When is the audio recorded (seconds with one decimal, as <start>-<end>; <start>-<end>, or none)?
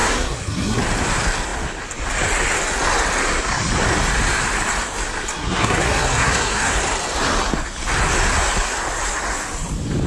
0.8-5.3; 6.8-10.1